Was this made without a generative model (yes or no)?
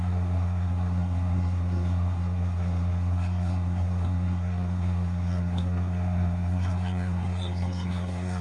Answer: no